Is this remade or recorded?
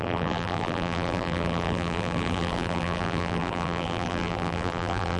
remade